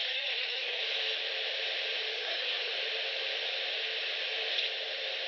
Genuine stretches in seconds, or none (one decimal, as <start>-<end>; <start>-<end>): 0.8-2.1; 2.7-5.3